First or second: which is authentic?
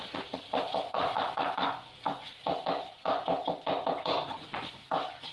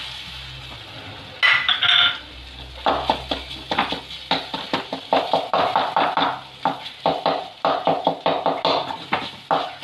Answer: second